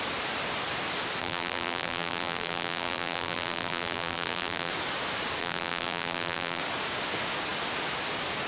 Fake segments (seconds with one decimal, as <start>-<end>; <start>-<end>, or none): 1.2-4.7; 5.4-6.6